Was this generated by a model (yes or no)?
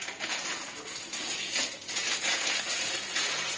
yes